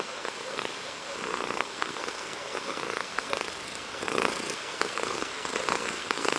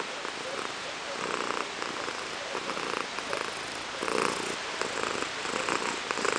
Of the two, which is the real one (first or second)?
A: second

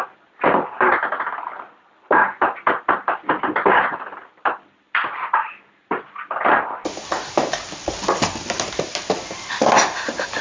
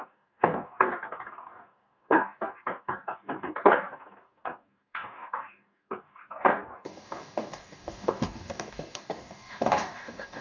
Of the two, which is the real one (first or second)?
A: first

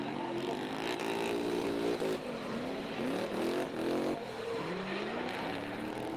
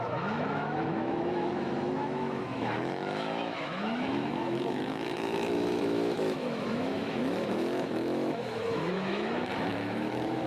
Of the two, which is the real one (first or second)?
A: first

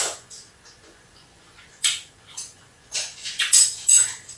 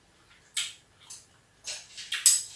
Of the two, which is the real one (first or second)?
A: second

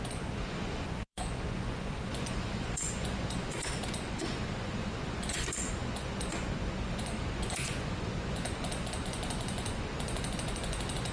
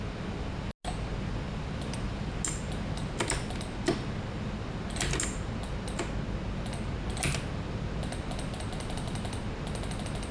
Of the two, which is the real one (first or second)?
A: second